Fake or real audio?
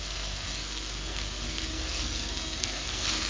fake